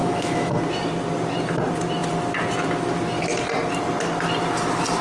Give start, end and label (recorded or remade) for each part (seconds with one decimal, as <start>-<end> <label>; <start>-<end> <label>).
0.0-0.5 remade; 0.5-5.0 recorded